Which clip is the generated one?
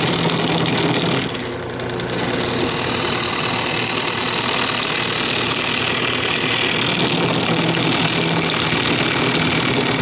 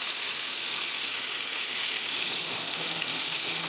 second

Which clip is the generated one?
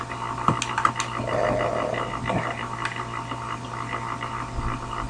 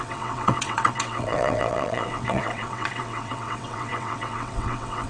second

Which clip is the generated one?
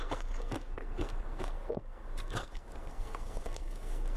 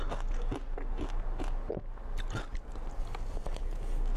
first